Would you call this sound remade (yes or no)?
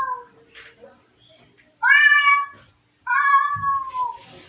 no